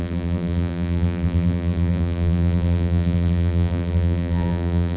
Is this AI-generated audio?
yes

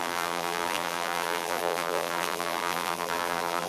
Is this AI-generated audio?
yes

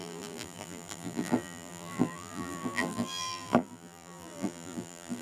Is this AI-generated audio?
yes